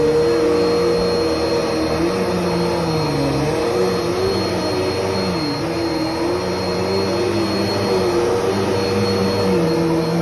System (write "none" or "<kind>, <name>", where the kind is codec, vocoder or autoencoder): none